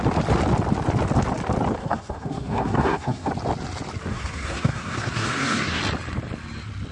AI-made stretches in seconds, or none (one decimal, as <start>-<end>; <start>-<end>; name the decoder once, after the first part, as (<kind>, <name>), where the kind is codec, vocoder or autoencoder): 1.8-3.3 (codec, SNAC); 4.1-5.8